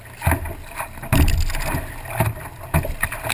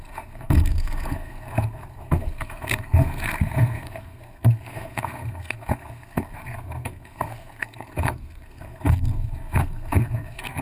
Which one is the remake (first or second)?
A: second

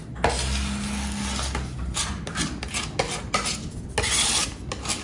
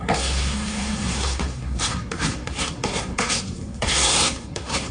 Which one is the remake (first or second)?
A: second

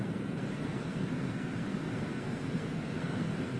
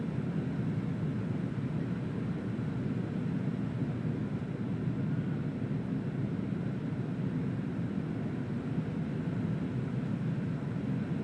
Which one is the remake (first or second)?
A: first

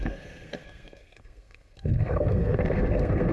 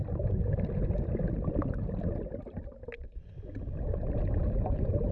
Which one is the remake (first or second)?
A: first